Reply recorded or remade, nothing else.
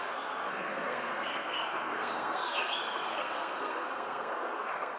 remade